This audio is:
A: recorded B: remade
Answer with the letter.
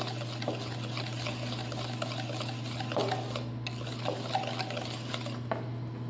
A